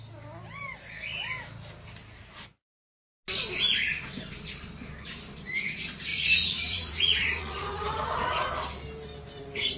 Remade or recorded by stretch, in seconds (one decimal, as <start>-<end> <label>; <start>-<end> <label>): 0.0-6.1 recorded; 6.1-8.5 remade; 8.5-9.8 recorded